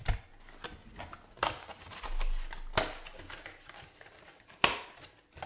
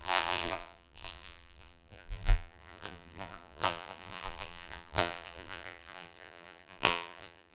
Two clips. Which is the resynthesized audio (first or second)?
second